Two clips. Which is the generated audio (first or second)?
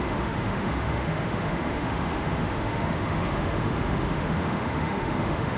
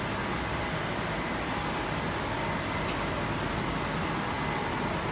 first